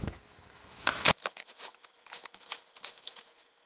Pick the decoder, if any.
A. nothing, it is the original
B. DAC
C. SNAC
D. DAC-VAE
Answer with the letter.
D